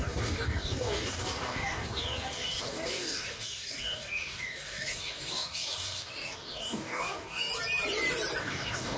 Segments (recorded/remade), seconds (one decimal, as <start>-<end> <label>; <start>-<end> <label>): 0.0-7.5 remade; 7.5-8.4 recorded; 8.4-9.0 remade

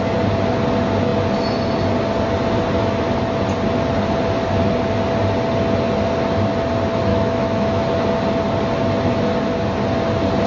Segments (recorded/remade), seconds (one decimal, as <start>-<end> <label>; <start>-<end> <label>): 0.0-7.1 recorded; 7.1-7.8 remade; 7.8-10.5 recorded

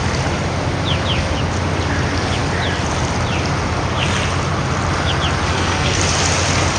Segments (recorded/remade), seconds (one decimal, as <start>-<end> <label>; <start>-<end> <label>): 0.0-5.5 recorded; 5.5-6.0 remade; 6.0-6.8 recorded

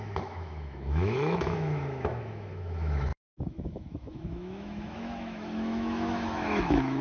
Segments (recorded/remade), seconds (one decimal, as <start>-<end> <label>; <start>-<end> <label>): 0.0-7.0 remade